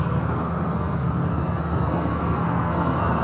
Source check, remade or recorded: remade